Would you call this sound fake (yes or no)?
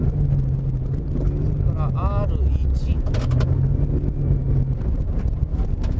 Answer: no